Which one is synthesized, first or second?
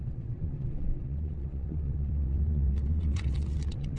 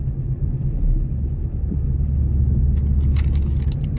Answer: first